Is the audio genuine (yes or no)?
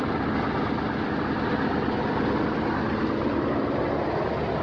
yes